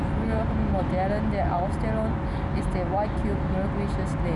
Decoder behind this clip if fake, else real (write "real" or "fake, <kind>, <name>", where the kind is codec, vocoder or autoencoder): real